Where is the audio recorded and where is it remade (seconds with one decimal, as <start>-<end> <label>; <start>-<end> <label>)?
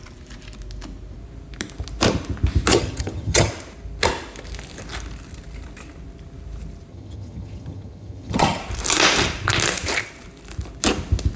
0.0-2.7 recorded; 2.7-3.5 remade; 3.5-6.9 recorded; 6.9-8.6 remade; 8.6-11.4 recorded